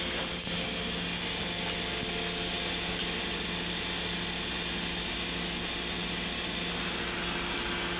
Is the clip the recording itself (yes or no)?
yes